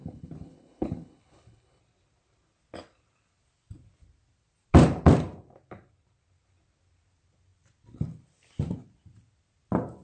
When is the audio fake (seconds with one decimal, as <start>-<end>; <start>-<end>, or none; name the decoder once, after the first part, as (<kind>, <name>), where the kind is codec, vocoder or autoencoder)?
0.0-1.8 (codec, HILCodec)